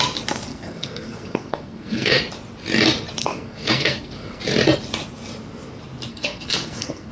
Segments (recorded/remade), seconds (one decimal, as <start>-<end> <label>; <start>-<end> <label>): 0.0-0.5 recorded; 0.5-2.2 remade; 2.2-3.2 recorded; 3.2-4.4 remade; 4.4-6.1 recorded; 6.1-7.1 remade